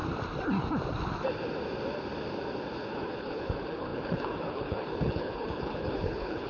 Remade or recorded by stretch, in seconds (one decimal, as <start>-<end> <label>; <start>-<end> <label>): 0.0-2.9 recorded; 2.9-6.5 remade